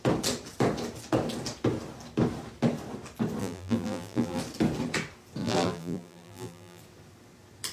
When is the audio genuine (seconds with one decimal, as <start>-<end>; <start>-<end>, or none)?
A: 0.0-3.4; 4.4-5.4; 6.8-7.7